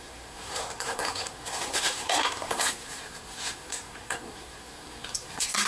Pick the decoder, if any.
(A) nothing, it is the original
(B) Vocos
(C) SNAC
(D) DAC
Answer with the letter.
C